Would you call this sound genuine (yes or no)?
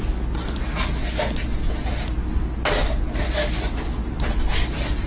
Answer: yes